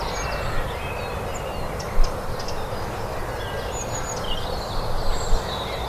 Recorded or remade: recorded